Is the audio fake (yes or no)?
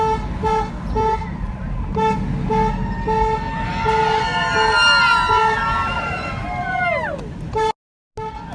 no